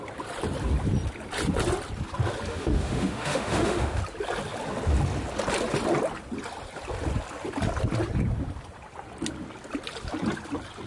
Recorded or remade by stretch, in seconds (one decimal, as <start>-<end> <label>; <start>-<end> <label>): 0.0-2.5 recorded; 2.5-4.0 remade; 4.0-10.9 recorded